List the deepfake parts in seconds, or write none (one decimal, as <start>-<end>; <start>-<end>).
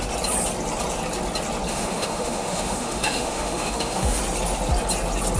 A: 1.7-4.2